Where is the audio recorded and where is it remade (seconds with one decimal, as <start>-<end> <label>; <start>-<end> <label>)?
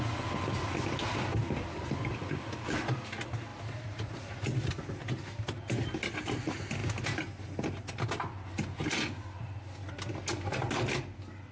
0.0-11.5 recorded